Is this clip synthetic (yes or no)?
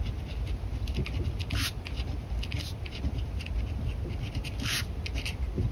no